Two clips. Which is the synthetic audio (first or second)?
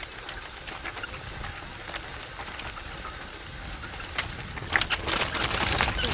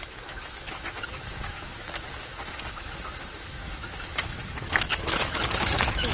second